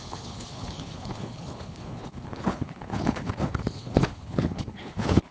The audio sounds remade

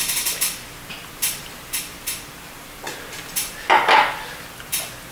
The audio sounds recorded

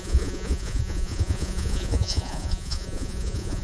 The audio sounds remade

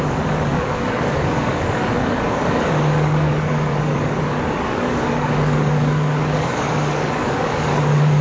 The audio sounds remade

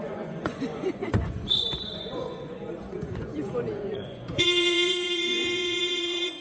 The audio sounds remade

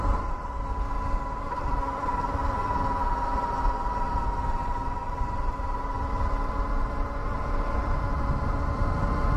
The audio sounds recorded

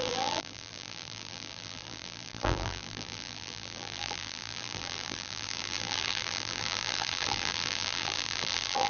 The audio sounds remade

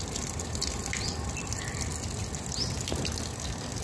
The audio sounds recorded